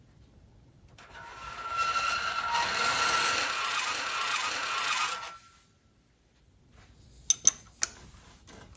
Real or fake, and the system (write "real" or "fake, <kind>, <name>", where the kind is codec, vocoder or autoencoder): real